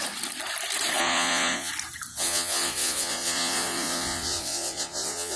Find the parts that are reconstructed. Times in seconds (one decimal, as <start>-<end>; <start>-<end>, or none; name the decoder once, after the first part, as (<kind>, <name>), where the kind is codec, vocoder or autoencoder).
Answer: 1.0-1.7 (vocoder, Vocos); 2.1-5.4